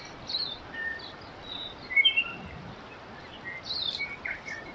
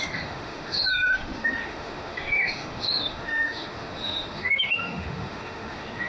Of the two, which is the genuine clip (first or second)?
first